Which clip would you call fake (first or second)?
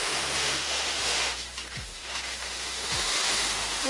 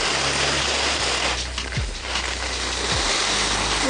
first